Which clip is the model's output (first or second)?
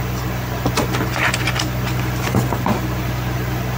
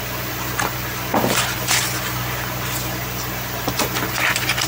second